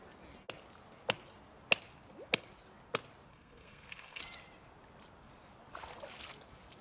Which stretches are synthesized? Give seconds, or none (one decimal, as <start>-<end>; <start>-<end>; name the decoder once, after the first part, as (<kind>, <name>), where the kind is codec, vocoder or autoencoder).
3.3-4.2 (codec, SNAC)